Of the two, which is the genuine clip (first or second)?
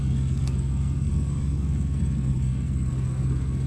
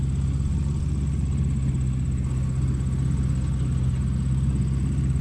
second